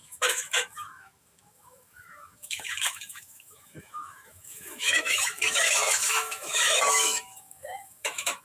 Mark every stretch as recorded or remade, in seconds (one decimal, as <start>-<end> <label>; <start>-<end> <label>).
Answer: 0.0-8.4 remade